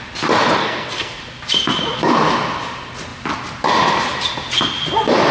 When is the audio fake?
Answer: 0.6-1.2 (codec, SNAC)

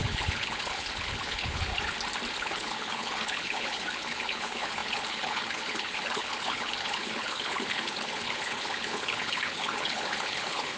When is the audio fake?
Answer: 0.0-1.7 (codec, HILCodec); 2.3-10.8

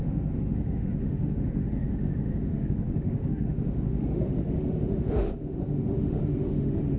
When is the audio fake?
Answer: 0.0-7.0 (autoencoder, DAC-VAE)

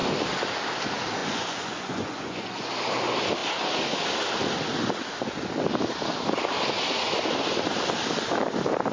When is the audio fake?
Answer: 1.2-2.7 (vocoder, Vocos)

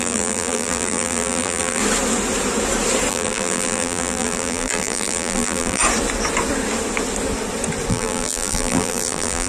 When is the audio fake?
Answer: 0.0-1.8 (vocoder, BigVGAN v2); 3.1-5.8; 7.9-9.5